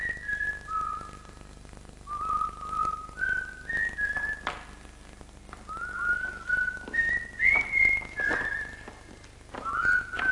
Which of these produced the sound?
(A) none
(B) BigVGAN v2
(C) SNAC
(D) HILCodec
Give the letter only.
A